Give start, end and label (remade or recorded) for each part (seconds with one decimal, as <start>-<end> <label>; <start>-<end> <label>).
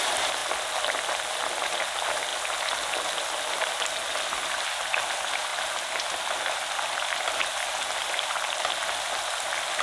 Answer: 0.0-9.8 recorded